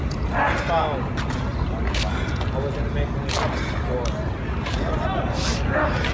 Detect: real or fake real